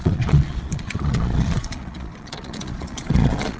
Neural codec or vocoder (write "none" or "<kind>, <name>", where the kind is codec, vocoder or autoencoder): vocoder, Vocos